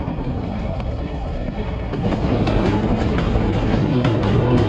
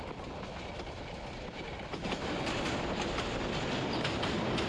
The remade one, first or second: first